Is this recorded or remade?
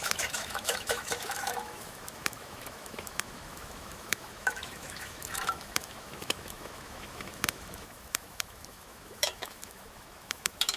remade